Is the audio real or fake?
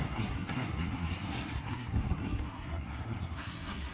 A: fake